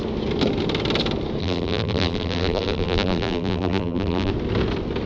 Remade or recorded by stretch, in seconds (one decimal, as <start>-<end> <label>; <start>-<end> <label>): 0.0-1.4 recorded; 1.4-4.3 remade; 4.3-5.1 recorded